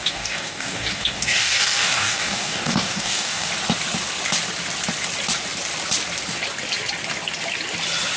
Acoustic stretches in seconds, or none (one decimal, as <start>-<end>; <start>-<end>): 3.5-8.2